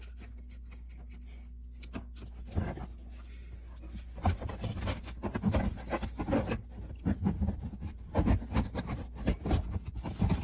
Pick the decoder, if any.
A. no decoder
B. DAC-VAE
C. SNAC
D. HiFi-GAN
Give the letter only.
A